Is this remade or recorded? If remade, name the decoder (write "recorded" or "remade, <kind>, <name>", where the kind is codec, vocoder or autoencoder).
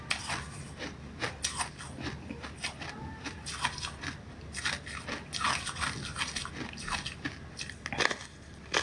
recorded